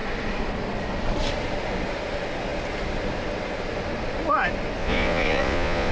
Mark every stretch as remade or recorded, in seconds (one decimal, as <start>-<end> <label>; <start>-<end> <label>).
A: 0.0-4.8 recorded; 4.8-5.9 remade